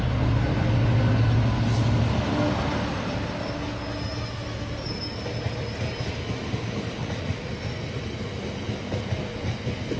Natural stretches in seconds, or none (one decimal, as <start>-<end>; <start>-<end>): 0.0-7.0; 7.5-10.0